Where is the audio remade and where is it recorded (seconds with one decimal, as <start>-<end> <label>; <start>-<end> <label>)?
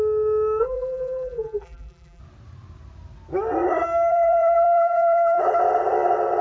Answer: 0.0-0.6 recorded; 0.6-2.2 remade; 2.2-4.1 recorded; 4.1-5.4 remade; 5.4-6.4 recorded